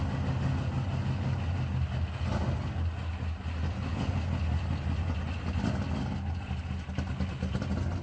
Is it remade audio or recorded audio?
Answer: recorded